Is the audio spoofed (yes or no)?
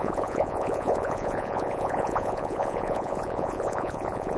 yes